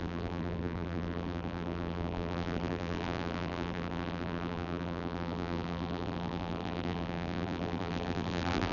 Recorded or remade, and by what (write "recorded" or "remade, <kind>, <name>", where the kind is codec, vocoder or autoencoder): remade, vocoder, BigVGAN v2